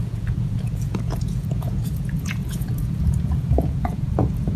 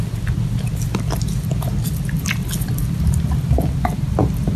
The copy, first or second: first